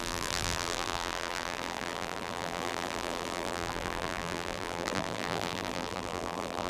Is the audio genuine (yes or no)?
no